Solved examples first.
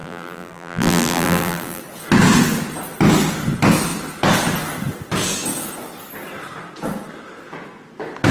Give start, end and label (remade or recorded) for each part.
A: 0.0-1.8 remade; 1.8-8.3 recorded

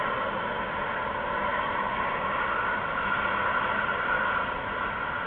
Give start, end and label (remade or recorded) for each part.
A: 0.0-5.3 recorded

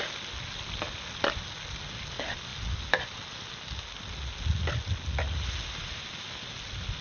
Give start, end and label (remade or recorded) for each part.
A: 0.0-7.0 recorded

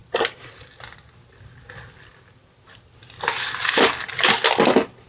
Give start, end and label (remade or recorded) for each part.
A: 0.0-0.5 remade; 0.5-5.1 recorded

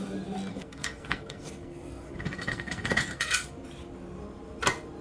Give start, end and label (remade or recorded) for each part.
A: 0.0-0.5 recorded; 0.5-3.5 remade; 3.5-5.0 recorded

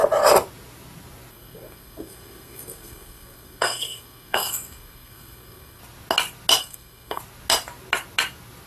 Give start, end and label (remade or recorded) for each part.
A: 0.0-1.3 recorded; 1.3-5.8 remade; 5.8-6.6 recorded; 6.6-7.2 remade; 7.2-8.7 recorded

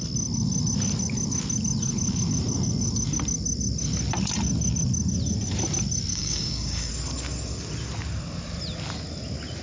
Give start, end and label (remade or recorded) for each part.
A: 0.0-6.1 recorded; 6.1-6.9 remade; 6.9-9.6 recorded

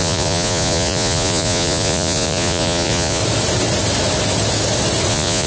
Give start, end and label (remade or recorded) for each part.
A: 0.0-3.2 remade; 3.2-5.1 recorded; 5.1-5.5 remade